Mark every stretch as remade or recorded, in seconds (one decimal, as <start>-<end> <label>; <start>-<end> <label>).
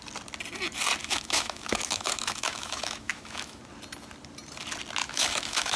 0.0-1.0 recorded; 1.0-3.6 remade; 3.6-5.0 recorded; 5.0-5.8 remade